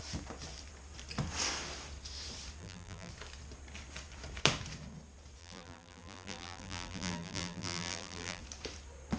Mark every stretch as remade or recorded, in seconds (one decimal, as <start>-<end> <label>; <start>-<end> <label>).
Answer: 0.0-2.6 recorded; 2.6-3.1 remade; 3.1-5.4 recorded; 5.4-8.4 remade; 8.4-9.2 recorded